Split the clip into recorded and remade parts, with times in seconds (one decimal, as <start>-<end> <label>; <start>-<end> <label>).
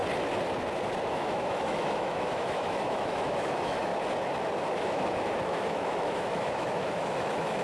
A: 0.0-1.1 recorded; 1.1-3.9 remade; 3.9-4.6 recorded; 4.6-7.6 remade